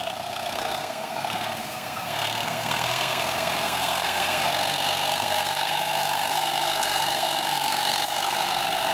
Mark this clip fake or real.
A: fake